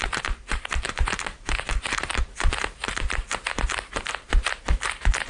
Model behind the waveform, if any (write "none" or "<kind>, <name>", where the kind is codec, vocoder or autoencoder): vocoder, BigVGAN v2